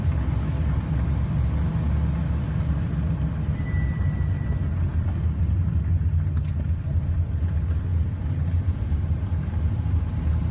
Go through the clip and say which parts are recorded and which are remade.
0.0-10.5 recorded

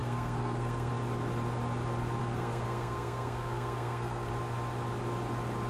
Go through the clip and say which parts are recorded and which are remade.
0.0-0.9 remade; 0.9-2.2 recorded; 2.2-4.3 remade; 4.3-5.7 recorded

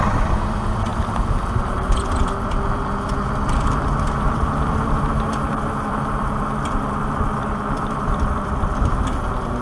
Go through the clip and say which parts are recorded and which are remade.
0.0-0.9 remade; 0.9-1.6 recorded; 1.6-9.6 remade

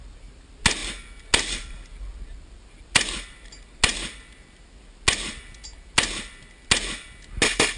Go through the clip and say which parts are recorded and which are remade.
0.0-7.8 recorded

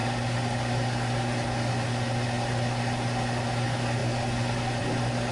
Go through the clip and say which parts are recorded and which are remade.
0.0-5.3 recorded

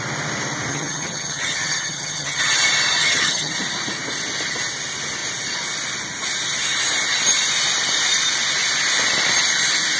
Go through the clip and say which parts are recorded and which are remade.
0.0-0.7 recorded; 0.7-2.4 remade; 2.4-3.0 recorded; 3.0-3.5 remade; 3.5-10.0 recorded

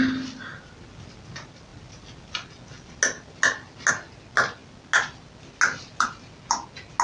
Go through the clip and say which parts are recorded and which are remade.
0.0-7.0 recorded

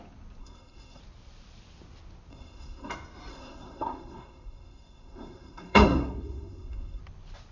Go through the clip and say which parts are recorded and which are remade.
0.0-0.4 recorded; 0.4-1.0 remade; 1.0-2.3 recorded; 2.3-2.9 remade; 2.9-3.3 recorded; 3.3-7.0 remade; 7.0-7.5 recorded